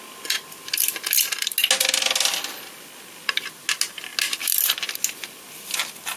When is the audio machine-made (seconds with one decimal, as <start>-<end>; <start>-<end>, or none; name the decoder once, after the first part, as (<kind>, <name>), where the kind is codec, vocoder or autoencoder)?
none